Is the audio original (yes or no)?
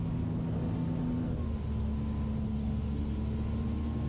yes